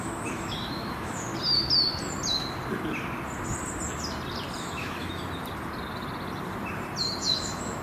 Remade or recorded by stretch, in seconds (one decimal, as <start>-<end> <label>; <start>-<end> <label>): 0.0-1.3 remade; 1.3-4.6 recorded; 4.6-5.2 remade; 5.2-7.2 recorded; 7.2-7.8 remade